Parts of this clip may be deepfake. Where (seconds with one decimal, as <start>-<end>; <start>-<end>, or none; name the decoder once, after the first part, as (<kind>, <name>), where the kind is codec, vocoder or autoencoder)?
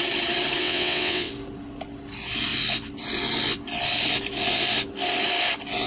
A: 0.6-1.3 (vocoder, WaveNeXt)